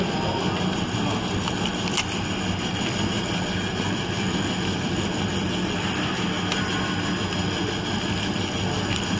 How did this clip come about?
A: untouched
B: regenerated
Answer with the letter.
A